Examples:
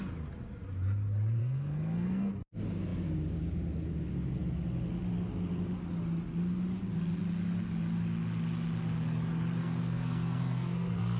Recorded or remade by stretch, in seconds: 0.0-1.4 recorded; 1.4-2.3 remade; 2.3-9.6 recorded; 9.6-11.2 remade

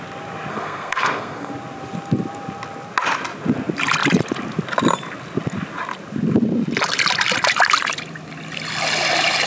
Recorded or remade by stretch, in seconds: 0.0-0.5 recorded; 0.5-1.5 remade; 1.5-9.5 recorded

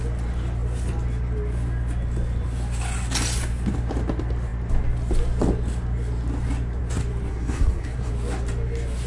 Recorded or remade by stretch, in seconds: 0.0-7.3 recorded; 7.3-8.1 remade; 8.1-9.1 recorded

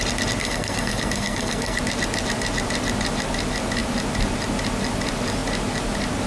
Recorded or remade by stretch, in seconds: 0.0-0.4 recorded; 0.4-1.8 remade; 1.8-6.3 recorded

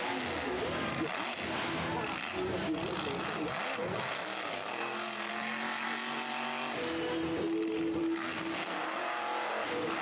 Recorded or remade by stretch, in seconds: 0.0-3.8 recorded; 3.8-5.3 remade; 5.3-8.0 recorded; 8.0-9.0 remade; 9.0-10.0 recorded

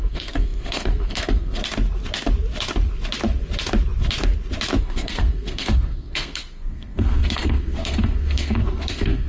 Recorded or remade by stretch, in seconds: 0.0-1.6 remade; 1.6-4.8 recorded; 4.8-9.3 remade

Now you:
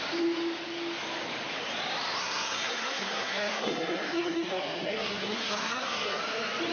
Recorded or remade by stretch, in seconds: 0.0-2.2 recorded; 2.2-6.2 remade; 6.2-6.7 recorded